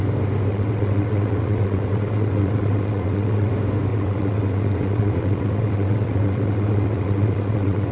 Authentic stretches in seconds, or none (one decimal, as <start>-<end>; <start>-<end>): 0.0-0.5; 3.5-3.9